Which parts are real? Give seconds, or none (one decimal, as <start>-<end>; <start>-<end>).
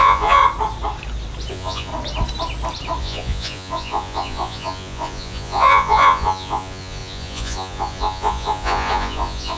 0.4-1.5; 1.9-3.0